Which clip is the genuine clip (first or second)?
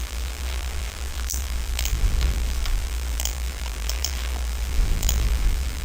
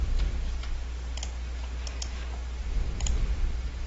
second